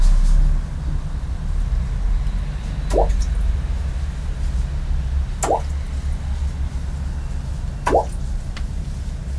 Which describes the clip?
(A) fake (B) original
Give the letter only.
B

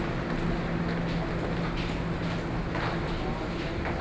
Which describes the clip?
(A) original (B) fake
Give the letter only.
A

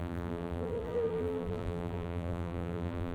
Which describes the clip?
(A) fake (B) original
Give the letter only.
A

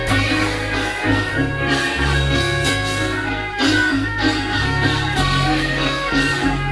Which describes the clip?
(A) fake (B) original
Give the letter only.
A